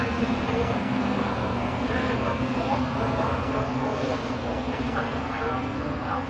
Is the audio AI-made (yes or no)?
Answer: yes